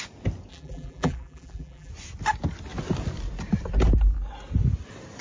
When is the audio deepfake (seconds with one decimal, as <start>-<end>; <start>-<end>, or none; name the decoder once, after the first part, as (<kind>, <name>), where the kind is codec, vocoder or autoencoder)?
0.5-1.9 (vocoder, BigVGAN v2)